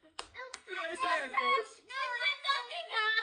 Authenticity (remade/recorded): remade